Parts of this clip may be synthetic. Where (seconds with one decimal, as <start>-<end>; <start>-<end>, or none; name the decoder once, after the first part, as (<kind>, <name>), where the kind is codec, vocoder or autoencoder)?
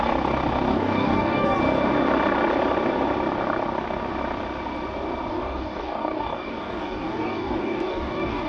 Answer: 0.7-1.6 (codec, DAC); 5.3-8.5